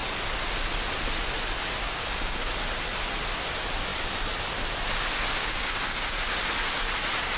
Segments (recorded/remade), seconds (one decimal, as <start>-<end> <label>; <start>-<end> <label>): 0.0-1.8 recorded; 1.8-2.5 remade; 2.5-5.4 recorded; 5.4-6.4 remade; 6.4-7.4 recorded